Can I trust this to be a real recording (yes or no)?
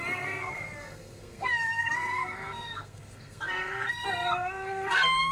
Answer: no